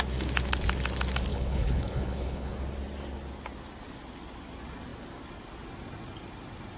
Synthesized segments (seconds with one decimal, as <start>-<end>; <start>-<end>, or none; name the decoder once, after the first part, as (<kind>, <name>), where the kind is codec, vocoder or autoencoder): 1.3-2.5 (codec, HILCodec)